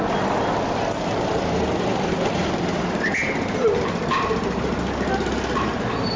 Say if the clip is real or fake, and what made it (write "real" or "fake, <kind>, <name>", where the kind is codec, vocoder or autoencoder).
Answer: real